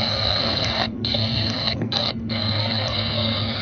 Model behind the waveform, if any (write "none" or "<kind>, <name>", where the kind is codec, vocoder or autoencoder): codec, SNAC